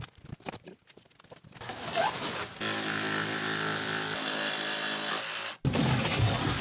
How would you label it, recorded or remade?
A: recorded